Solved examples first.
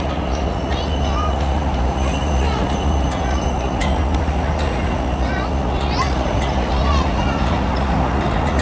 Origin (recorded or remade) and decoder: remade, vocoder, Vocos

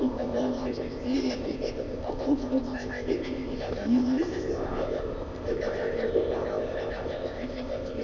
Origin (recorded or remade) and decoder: remade, codec, ZipCodec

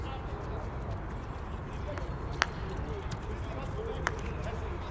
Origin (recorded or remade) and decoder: recorded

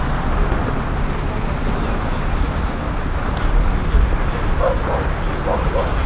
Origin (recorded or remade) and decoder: recorded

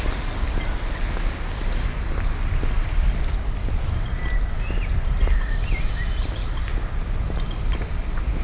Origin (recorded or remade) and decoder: recorded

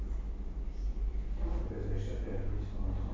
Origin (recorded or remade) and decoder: recorded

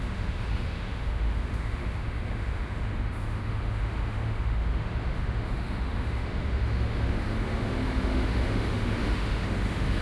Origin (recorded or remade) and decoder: remade, autoencoder, DAC-VAE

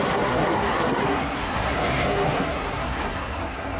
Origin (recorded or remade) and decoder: remade, codec, SNAC